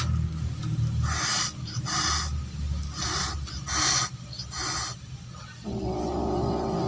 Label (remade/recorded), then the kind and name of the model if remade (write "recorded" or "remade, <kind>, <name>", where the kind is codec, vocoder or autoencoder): recorded